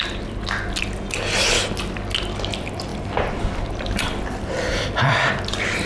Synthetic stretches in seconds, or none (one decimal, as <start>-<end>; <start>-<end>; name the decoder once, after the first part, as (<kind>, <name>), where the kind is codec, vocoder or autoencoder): 2.9-5.3 (vocoder, BigVGAN v2)